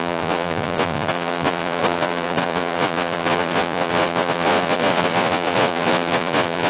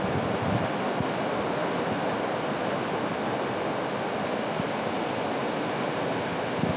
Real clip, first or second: second